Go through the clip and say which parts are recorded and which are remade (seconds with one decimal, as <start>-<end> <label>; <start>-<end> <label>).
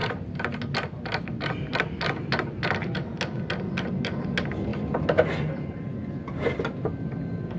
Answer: 0.0-7.6 recorded